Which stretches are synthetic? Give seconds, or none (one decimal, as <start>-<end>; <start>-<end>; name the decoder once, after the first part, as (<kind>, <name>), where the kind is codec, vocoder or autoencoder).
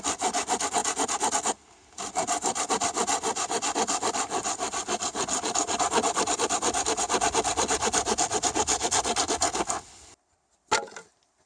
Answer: none